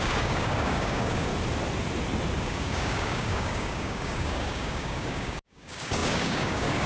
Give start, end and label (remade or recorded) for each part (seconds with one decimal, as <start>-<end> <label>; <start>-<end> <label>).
0.0-1.3 remade; 1.3-2.4 recorded; 2.4-6.9 remade